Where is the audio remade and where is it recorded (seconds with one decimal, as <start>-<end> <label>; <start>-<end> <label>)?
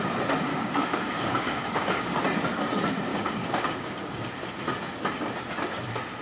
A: 0.0-0.5 recorded; 0.5-2.2 remade; 2.2-3.1 recorded; 3.1-4.3 remade; 4.3-6.2 recorded